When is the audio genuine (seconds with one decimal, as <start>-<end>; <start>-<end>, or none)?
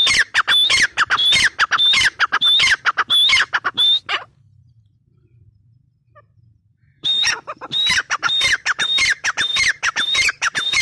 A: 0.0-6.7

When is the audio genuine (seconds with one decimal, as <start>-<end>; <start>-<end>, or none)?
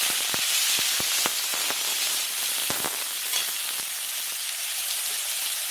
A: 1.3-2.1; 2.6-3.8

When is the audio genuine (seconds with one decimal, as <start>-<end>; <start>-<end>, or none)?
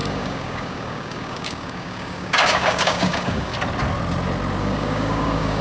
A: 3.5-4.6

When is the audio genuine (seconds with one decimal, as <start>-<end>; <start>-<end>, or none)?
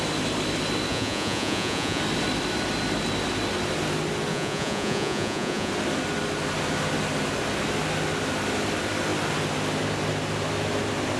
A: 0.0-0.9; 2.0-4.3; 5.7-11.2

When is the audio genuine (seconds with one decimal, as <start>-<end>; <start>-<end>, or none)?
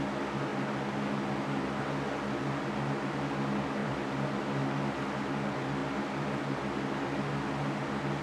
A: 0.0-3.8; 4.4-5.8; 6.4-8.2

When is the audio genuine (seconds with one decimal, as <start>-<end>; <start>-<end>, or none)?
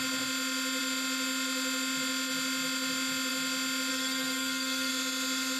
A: 0.0-3.9; 4.9-5.6